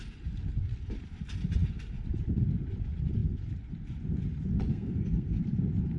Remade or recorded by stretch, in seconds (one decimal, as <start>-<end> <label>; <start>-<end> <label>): 0.0-4.7 recorded; 4.7-5.4 remade; 5.4-6.0 recorded